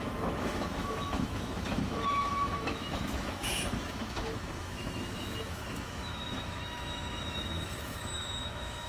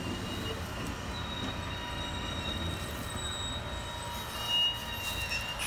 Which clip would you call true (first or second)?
second